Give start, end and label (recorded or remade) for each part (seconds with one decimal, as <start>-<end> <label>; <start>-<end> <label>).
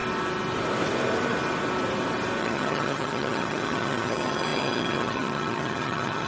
0.0-2.4 recorded; 2.4-6.3 remade